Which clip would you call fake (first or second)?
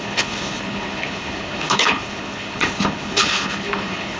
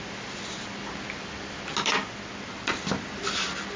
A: first